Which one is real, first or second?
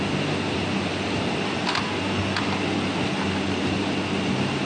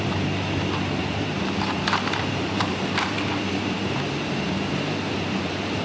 first